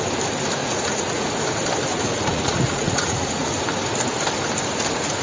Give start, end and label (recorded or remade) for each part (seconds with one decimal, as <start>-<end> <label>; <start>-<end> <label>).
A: 0.0-0.6 recorded; 0.6-1.3 remade; 1.3-1.9 recorded; 1.9-3.5 remade; 3.5-5.2 recorded